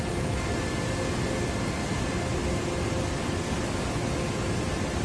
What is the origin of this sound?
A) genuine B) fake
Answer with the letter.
A